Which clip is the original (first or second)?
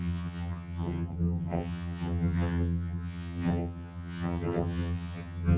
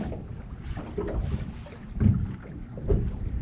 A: second